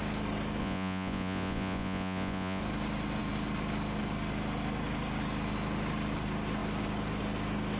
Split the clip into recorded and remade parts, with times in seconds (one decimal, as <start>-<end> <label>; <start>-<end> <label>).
0.0-0.6 recorded; 0.6-2.6 remade; 2.6-7.8 recorded